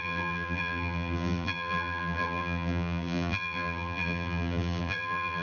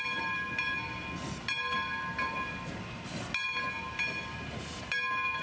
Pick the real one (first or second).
second